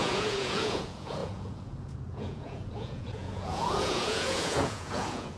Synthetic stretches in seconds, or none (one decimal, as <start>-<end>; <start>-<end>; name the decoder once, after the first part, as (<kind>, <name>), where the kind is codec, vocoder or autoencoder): 0.0-5.4 (vocoder, Vocos)